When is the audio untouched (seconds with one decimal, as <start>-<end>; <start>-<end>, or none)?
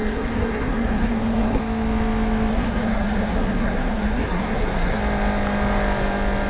1.6-2.5; 5.0-6.5